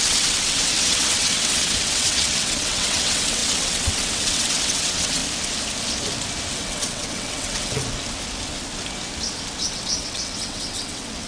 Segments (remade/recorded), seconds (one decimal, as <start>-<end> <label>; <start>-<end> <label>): 0.0-5.2 remade; 5.2-6.5 recorded; 6.5-7.8 remade; 7.8-9.6 recorded; 9.6-11.3 remade